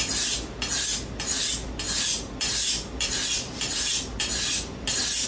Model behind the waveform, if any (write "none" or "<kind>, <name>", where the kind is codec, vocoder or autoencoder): none